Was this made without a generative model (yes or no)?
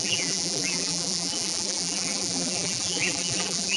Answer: no